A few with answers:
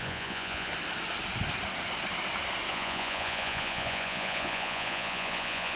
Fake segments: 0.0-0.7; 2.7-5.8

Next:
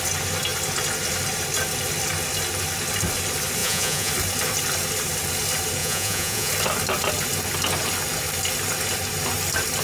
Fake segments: 3.6-4.1; 5.8-6.5

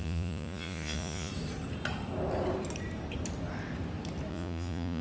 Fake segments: 0.0-1.3; 4.3-5.0

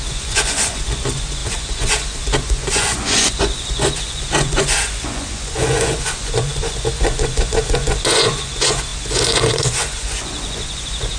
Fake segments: 0.0-11.2